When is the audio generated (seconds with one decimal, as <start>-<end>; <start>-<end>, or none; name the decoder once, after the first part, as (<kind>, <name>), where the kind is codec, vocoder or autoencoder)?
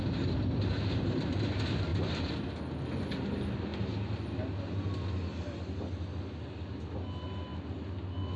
none